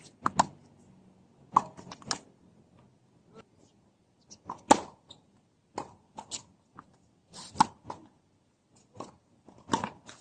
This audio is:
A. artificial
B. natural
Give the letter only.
B